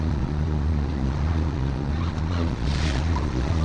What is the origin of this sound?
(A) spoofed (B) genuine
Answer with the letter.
A